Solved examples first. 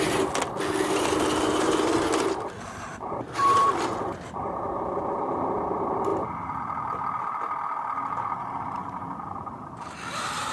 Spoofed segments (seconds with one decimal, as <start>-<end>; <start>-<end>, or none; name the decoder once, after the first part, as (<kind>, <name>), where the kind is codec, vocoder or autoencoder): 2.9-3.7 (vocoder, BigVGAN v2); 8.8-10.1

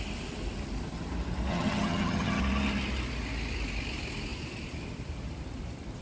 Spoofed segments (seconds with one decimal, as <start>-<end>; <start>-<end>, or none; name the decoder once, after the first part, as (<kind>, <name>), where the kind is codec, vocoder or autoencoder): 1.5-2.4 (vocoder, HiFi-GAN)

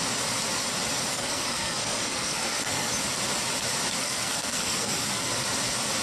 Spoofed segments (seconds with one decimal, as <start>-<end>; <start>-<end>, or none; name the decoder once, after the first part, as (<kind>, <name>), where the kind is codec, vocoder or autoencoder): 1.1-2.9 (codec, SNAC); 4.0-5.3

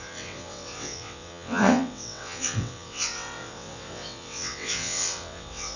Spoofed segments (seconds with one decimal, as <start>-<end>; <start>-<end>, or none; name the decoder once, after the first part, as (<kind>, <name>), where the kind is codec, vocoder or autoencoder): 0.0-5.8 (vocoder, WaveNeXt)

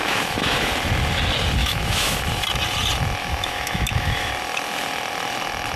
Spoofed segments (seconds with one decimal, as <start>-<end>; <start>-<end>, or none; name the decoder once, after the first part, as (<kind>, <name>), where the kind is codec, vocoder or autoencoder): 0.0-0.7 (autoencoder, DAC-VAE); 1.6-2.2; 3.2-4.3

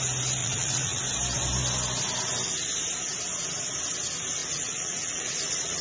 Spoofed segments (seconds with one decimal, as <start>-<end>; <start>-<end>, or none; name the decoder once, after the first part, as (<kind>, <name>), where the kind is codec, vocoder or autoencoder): 0.4-1.0 (vocoder, Vocos); 4.4-5.8